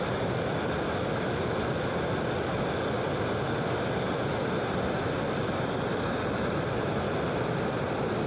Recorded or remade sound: recorded